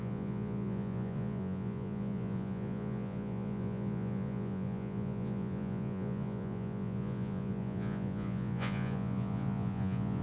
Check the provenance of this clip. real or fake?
fake